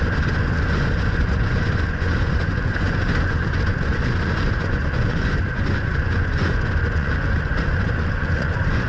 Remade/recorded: remade